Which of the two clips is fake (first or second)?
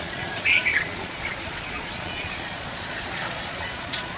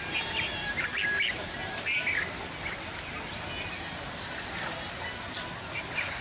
first